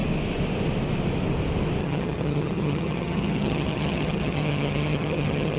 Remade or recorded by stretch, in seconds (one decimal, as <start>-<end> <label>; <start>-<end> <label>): 0.0-1.8 recorded; 1.8-5.6 remade